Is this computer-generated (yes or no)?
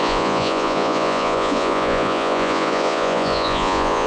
yes